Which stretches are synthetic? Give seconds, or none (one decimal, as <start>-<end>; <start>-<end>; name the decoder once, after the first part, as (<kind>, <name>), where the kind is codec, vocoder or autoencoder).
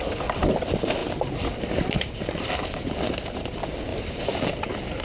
1.0-3.0 (vocoder, BigVGAN v2); 3.9-4.5